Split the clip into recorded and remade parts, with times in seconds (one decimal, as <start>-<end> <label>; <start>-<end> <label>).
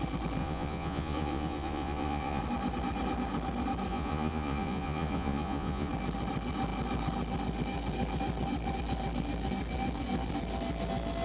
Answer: 0.0-0.4 recorded; 0.4-2.4 remade; 2.4-3.9 recorded; 3.9-5.9 remade; 5.9-11.2 recorded